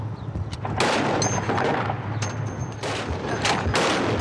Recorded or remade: recorded